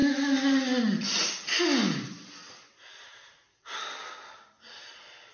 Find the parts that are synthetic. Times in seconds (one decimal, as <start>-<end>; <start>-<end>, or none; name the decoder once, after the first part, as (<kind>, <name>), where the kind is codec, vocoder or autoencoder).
none